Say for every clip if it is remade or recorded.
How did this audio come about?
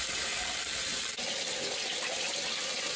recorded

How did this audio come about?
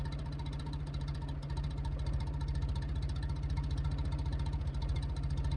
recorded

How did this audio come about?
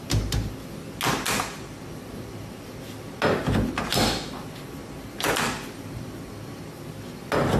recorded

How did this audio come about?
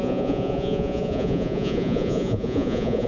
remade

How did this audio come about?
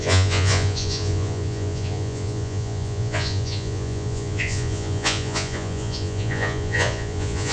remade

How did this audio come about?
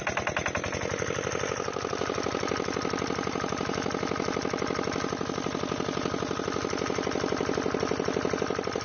recorded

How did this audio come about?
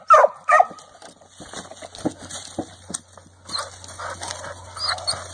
recorded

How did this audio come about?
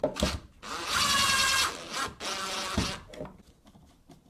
recorded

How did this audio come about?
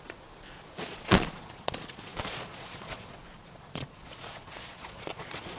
remade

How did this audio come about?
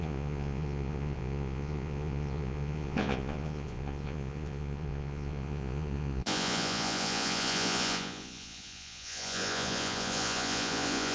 remade